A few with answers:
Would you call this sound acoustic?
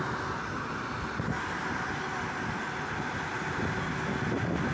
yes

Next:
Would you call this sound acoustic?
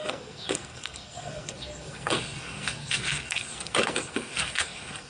no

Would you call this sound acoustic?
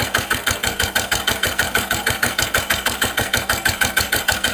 no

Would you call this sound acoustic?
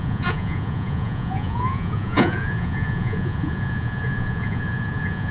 no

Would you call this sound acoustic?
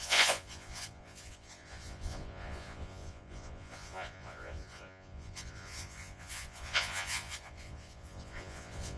no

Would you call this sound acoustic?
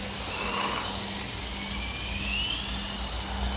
yes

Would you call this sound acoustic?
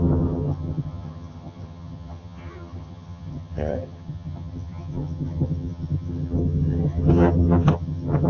no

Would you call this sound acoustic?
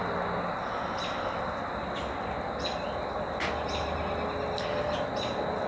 yes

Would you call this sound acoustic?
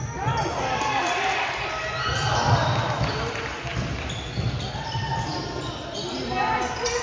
yes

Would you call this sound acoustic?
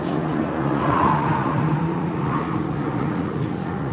no